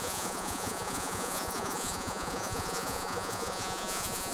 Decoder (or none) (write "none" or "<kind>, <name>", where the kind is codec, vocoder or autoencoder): vocoder, Vocos